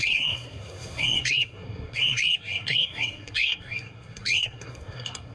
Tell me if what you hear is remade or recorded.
remade